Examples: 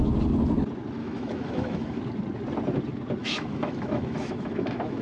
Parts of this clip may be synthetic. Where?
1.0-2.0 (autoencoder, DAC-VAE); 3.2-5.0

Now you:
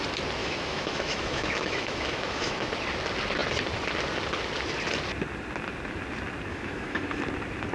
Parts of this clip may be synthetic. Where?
0.4-2.7 (autoencoder, DAC-VAE); 6.5-7.2

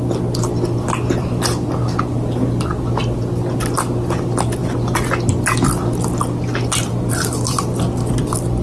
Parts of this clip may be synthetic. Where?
none

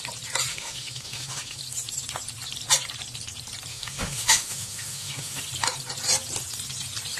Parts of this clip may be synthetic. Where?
0.5-1.6 (autoencoder, DAC-VAE); 3.7-5.4

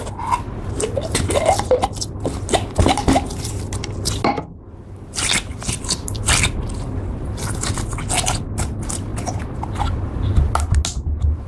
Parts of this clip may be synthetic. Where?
none

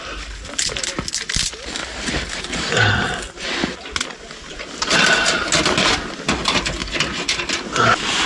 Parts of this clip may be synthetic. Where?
none